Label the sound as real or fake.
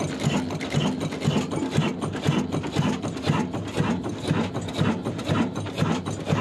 real